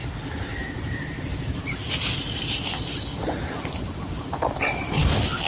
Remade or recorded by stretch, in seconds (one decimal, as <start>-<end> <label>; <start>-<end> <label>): 0.0-0.6 recorded; 0.6-2.6 remade; 2.6-5.5 recorded